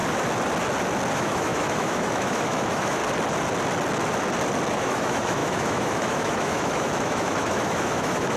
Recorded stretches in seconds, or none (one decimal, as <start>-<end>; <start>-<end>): 0.0-1.1; 3.0-4.7